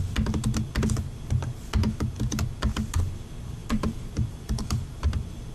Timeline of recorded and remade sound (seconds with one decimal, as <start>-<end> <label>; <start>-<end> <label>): 0.0-3.6 recorded; 3.6-5.1 remade; 5.1-5.5 recorded